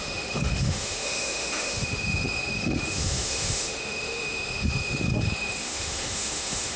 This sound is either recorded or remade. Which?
remade